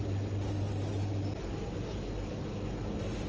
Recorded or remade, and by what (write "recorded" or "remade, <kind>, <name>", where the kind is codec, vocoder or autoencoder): recorded